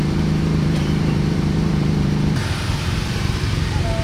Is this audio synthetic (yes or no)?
yes